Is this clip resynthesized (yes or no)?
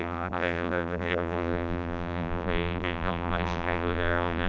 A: yes